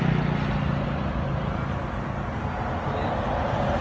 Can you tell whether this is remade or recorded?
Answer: recorded